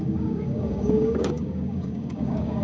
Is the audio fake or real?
fake